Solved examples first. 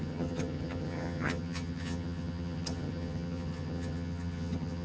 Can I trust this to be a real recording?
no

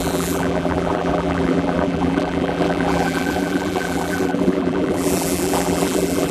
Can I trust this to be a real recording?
no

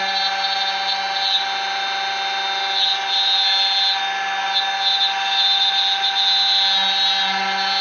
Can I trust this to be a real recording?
yes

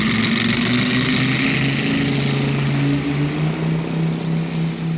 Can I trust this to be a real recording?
yes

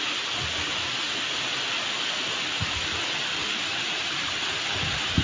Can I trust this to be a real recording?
yes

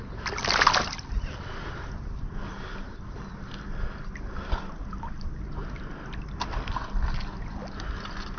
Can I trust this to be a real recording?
yes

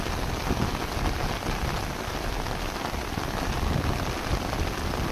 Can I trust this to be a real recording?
yes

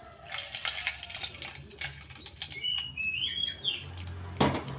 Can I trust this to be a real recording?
yes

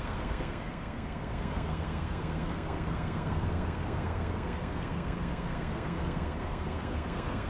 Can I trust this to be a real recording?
no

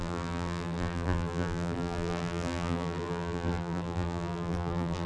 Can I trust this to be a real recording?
no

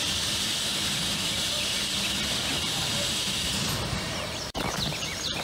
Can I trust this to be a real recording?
no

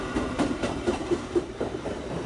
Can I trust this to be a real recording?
no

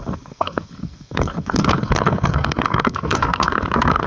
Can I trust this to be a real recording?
no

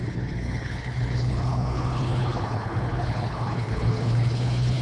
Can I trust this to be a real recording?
no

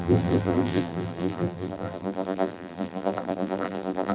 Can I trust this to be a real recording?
no